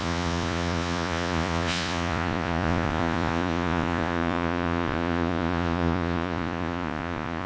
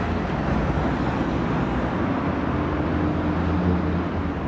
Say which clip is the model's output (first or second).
first